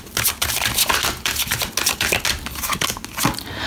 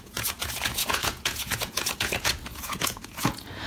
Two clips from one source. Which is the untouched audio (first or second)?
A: first